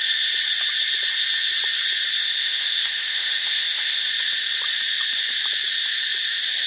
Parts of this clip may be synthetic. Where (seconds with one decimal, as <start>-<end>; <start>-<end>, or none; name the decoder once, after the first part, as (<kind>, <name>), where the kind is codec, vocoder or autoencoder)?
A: 2.2-4.1 (codec, ZipCodec)